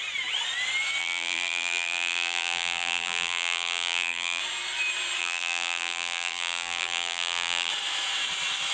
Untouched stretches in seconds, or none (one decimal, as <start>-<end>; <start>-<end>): 0.0-1.0; 4.4-5.2; 7.7-8.7